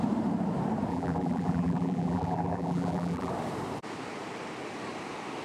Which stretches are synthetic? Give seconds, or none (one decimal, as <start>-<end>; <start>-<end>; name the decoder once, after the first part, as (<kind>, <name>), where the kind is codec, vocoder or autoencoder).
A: 0.9-3.3 (vocoder, BigVGAN v2)

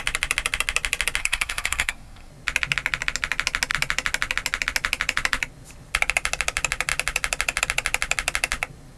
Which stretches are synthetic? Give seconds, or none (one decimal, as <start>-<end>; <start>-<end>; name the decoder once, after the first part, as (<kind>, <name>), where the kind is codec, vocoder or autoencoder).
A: 1.2-2.3 (codec, SNAC)